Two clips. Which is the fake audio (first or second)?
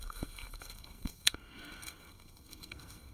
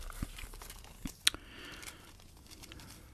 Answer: first